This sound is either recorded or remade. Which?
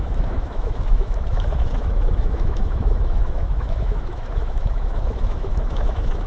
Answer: remade